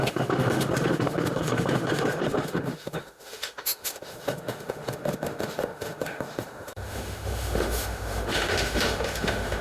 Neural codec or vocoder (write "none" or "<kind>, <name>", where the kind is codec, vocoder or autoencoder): autoencoder, DAC-VAE